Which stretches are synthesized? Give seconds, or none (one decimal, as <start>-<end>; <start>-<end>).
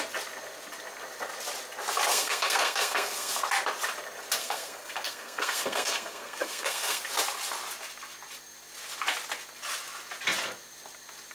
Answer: 2.1-3.4; 4.4-7.0